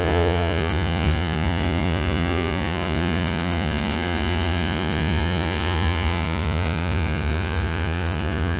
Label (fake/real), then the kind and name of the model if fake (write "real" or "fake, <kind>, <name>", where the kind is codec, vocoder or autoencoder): fake, vocoder, Vocos